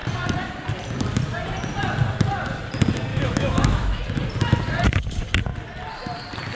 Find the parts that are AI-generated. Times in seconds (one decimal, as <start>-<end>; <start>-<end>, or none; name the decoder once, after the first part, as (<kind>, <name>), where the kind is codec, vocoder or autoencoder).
3.1-4.0 (autoencoder, DAC-VAE)

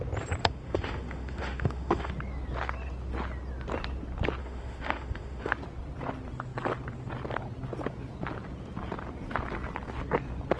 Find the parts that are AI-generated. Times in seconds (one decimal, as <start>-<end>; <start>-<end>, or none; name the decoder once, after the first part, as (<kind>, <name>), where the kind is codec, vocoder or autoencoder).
0.4-2.1 (autoencoder, DAC-VAE); 4.4-5.5

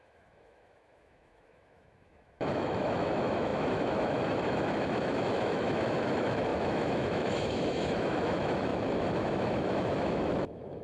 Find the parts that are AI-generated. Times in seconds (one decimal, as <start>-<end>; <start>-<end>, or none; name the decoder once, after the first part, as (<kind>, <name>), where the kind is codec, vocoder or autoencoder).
0.0-10.8 (autoencoder, DAC-VAE)

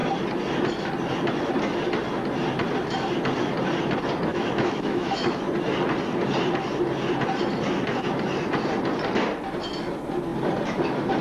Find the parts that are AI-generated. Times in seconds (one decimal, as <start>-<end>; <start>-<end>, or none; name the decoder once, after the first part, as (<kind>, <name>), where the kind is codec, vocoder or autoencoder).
4.3-5.4 (autoencoder, DAC-VAE)